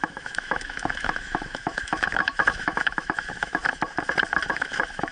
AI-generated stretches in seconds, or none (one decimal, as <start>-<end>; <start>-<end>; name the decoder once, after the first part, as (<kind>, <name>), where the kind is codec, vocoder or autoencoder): 0.0-3.6 (autoencoder, DAC-VAE); 4.5-5.1